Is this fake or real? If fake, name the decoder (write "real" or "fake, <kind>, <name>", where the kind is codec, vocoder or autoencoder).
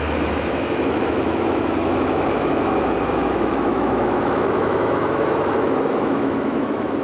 fake, autoencoder, DAC-VAE